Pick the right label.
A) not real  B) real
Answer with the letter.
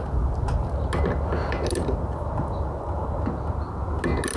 B